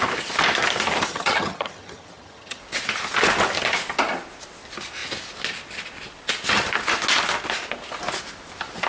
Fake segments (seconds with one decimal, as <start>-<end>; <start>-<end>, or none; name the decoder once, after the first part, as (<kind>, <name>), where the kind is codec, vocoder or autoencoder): 1.1-2.6 (vocoder, HiFi-GAN)